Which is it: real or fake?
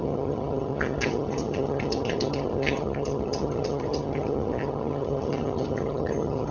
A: fake